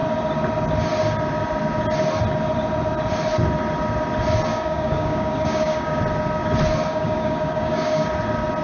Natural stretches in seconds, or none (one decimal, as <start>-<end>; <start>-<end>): 0.0-4.5; 6.0-6.9; 8.1-8.6